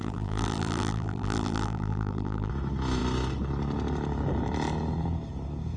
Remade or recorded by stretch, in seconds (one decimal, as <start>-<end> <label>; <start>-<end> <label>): 0.0-2.5 remade; 2.5-5.8 recorded